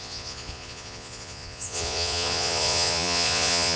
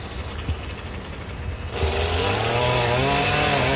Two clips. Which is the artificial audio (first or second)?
first